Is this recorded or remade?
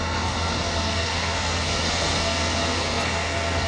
remade